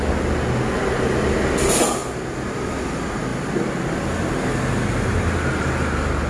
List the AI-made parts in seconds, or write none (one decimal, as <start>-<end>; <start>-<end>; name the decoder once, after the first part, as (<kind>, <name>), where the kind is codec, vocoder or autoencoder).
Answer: none